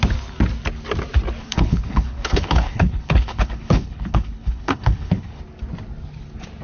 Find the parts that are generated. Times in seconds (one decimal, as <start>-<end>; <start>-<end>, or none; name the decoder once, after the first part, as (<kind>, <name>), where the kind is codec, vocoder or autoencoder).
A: 1.4-5.4 (codec, HILCodec)